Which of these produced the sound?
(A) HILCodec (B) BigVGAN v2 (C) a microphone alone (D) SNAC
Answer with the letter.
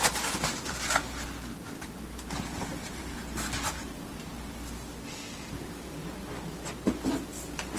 C